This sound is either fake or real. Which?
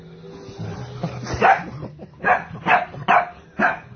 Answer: real